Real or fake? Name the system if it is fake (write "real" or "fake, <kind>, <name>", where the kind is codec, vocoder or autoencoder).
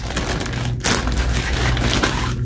real